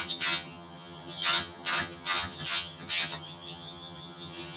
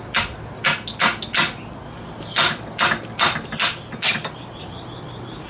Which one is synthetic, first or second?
first